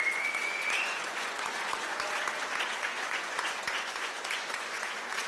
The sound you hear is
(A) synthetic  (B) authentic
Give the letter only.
A